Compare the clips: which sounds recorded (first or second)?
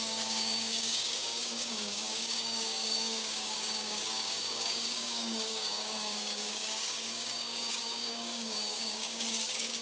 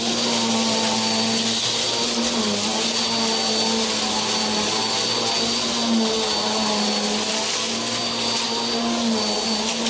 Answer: second